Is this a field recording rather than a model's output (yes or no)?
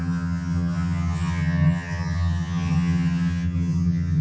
no